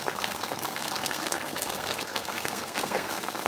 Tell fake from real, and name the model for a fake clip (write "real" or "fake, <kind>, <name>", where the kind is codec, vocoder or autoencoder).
fake, codec, SNAC